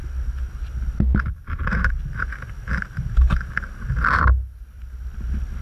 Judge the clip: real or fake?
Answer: real